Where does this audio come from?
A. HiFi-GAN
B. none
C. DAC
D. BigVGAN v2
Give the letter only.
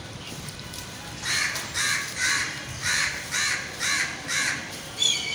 D